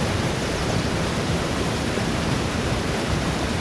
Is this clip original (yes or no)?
no